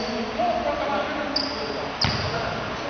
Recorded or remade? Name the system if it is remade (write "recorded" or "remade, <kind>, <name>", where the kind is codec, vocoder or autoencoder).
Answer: recorded